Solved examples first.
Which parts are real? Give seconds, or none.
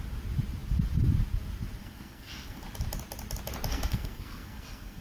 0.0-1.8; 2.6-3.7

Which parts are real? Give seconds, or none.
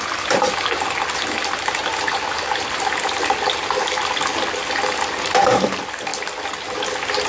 0.0-7.3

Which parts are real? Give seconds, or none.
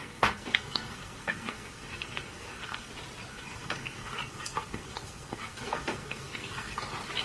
2.9-3.3; 6.8-7.2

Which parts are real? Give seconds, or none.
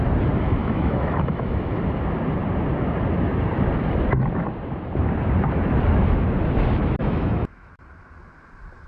0.0-0.6; 1.8-7.0; 7.7-8.9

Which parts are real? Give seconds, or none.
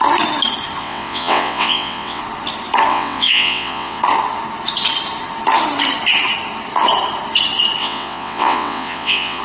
0.0-0.8; 2.2-2.9; 4.0-7.8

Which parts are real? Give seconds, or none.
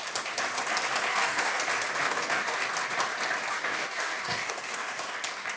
0.0-1.1; 1.6-2.0; 2.6-3.5; 5.1-5.6